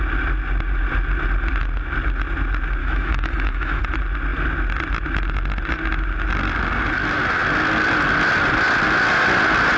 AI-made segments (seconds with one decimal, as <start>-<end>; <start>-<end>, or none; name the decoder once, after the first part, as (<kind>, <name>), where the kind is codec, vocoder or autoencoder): 2.8-3.8 (autoencoder, DAC-VAE)